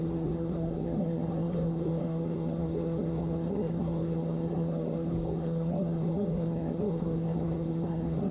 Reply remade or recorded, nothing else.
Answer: remade